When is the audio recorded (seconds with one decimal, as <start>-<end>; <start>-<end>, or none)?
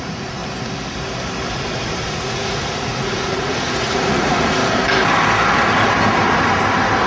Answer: 0.4-1.5; 4.6-7.1